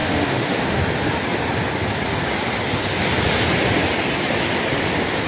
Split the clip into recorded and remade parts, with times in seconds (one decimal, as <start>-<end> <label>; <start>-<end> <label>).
0.0-0.8 remade; 0.8-5.3 recorded